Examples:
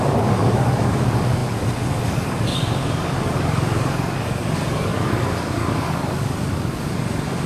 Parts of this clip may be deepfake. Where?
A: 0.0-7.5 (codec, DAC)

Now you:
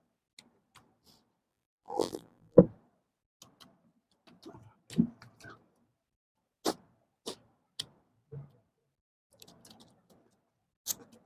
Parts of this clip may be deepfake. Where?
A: 1.5-2.6 (vocoder, BigVGAN v2)

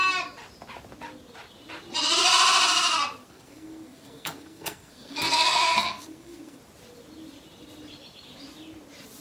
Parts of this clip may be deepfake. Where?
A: 3.2-6.6 (codec, SNAC)

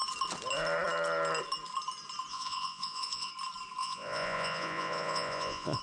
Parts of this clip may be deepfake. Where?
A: 2.3-3.3 (vocoder, Vocos); 3.8-5.8